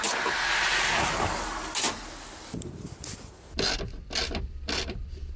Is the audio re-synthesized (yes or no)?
no